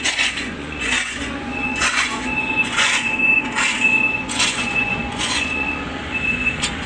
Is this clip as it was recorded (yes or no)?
no